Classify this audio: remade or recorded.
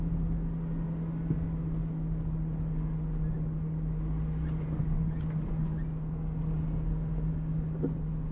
recorded